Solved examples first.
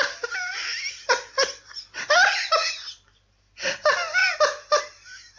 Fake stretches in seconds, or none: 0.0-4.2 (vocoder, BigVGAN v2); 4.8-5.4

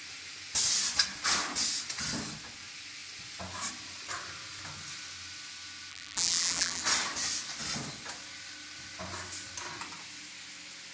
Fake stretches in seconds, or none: 5.9-6.8 (vocoder, BigVGAN v2)

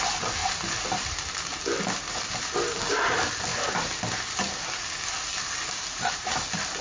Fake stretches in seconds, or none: 5.3-6.3 (vocoder, BigVGAN v2)

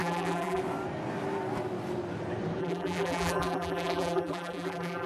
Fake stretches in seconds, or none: 0.0-0.6 (vocoder, BigVGAN v2); 2.6-5.1

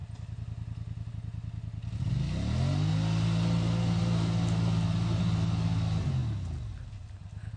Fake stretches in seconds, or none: 2.9-5.2 (vocoder, BigVGAN v2)

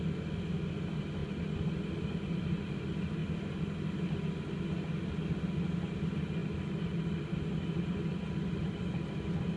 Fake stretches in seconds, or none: none

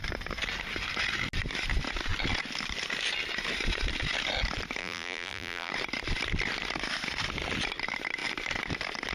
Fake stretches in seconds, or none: 4.8-5.7 (vocoder, BigVGAN v2)